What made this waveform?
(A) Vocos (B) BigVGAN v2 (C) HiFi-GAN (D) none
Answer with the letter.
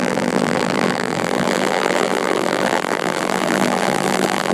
B